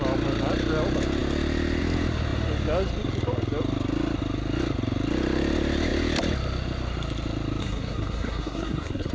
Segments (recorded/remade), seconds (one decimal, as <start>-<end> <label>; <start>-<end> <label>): 0.0-7.6 recorded; 7.6-9.1 remade